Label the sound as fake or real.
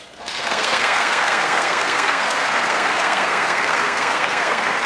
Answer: fake